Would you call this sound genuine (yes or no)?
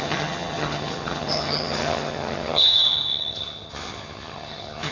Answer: no